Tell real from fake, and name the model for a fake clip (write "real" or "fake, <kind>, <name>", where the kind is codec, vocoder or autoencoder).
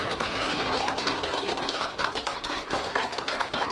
fake, codec, SNAC